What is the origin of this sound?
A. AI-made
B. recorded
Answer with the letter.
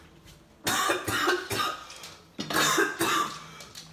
B